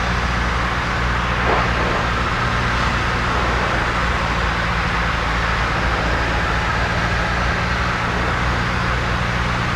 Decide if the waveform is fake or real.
real